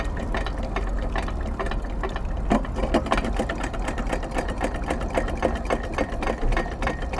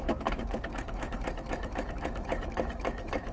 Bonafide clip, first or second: first